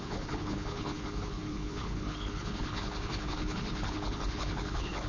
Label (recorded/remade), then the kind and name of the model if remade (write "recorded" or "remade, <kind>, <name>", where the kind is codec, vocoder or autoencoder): remade, codec, HILCodec